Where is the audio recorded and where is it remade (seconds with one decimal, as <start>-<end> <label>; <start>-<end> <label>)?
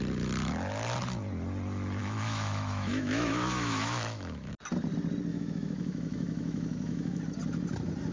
0.0-2.0 recorded; 2.0-4.5 remade; 4.5-5.3 recorded; 5.3-7.2 remade; 7.2-8.1 recorded